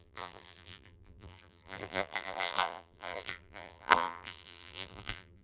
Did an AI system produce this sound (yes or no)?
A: yes